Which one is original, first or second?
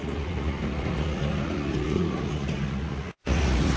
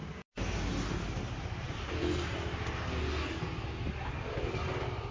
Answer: second